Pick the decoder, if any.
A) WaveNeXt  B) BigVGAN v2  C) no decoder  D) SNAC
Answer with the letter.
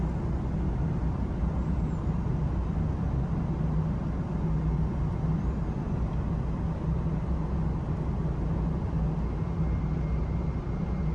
C